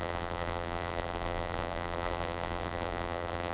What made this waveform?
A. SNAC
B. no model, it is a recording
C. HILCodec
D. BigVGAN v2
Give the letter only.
D